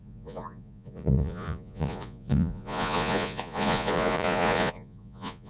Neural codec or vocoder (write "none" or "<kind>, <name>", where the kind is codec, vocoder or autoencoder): vocoder, Vocos